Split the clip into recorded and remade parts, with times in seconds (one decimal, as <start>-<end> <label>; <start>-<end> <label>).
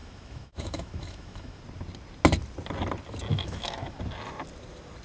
0.0-1.6 remade; 1.6-3.3 recorded; 3.3-4.0 remade; 4.0-5.0 recorded